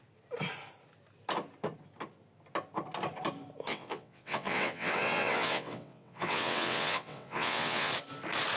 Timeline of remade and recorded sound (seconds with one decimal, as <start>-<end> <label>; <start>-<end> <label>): 0.0-3.7 recorded; 3.7-7.9 remade; 7.9-8.6 recorded